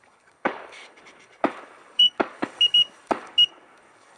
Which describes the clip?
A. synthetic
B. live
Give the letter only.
A